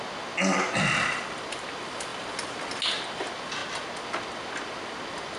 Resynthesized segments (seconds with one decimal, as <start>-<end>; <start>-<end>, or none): none